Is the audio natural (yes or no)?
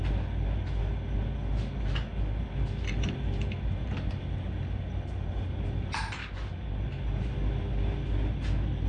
yes